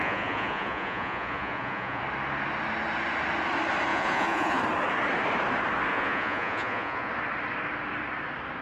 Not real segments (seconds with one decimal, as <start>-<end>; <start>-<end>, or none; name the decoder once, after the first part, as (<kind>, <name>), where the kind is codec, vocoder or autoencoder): 0.0-2.0 (vocoder, Vocos); 3.9-4.6; 5.9-7.1